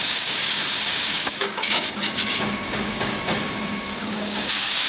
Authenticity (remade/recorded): remade